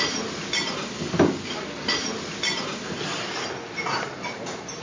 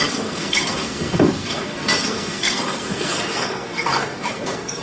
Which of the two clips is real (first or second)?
first